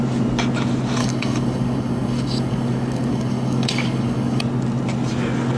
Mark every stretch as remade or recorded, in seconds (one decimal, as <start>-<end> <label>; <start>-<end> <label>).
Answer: 0.0-1.0 recorded; 1.0-4.4 remade; 4.4-5.6 recorded